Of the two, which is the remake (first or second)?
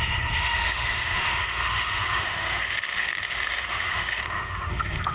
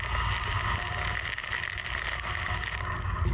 first